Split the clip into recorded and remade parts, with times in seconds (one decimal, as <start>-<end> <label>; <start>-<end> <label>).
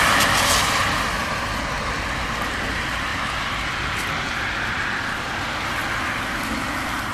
0.0-7.1 recorded